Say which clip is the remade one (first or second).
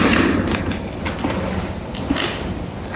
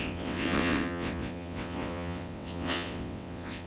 second